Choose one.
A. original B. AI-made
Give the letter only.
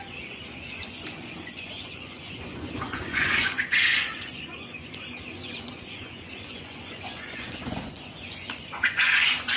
B